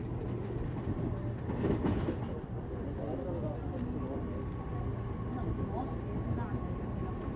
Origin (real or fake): real